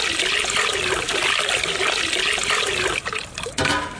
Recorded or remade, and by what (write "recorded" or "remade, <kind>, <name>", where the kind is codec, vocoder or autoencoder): recorded